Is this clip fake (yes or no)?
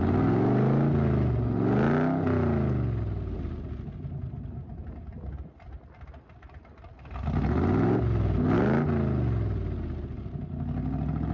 no